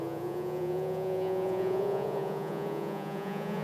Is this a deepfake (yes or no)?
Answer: yes